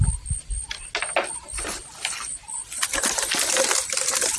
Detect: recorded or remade recorded